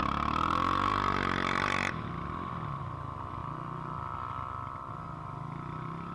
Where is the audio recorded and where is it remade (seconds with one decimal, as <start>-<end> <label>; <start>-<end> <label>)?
0.0-6.1 recorded